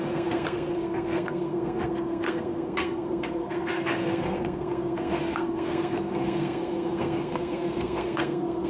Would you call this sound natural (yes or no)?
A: no